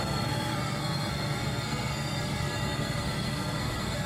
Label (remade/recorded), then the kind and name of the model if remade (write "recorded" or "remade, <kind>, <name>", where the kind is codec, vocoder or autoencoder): remade, codec, SNAC